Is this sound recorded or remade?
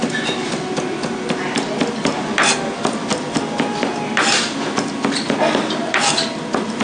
recorded